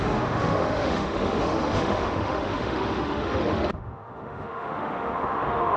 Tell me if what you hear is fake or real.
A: fake